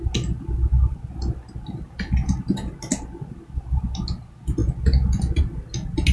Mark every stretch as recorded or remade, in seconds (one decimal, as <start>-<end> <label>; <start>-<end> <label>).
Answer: 0.0-6.1 recorded